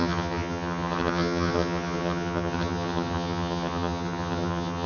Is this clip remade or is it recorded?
remade